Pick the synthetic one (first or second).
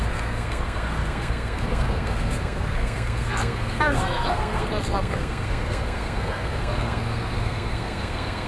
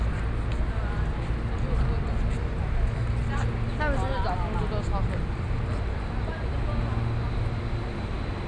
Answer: first